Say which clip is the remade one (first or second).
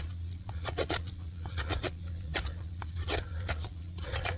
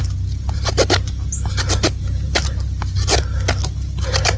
first